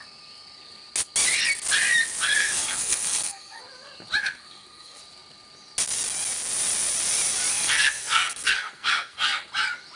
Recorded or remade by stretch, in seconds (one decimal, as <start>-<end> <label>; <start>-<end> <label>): 0.0-2.4 recorded; 2.4-3.6 remade; 3.6-4.2 recorded; 4.2-5.0 remade; 5.0-7.5 recorded; 7.5-9.5 remade; 9.5-10.0 recorded